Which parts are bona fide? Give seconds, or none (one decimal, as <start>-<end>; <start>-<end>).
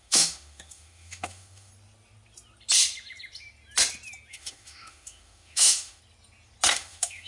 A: 1.7-4.3; 6.0-6.7